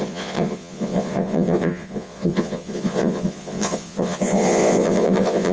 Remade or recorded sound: remade